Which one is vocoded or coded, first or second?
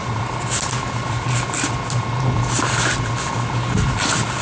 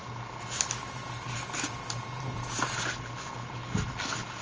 first